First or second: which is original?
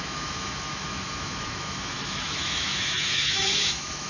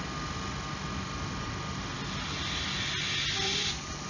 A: second